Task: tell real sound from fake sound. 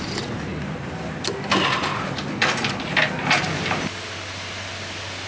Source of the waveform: real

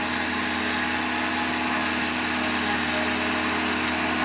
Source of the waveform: real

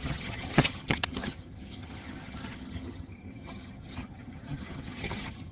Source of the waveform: fake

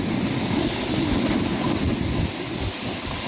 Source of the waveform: real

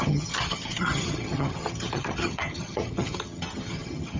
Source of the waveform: fake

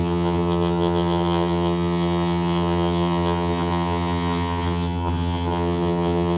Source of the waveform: fake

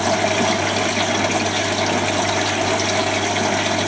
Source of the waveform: real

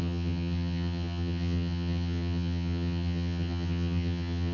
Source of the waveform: fake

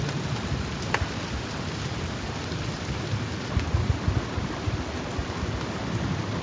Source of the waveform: real